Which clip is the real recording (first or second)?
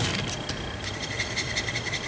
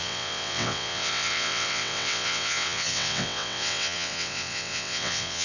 first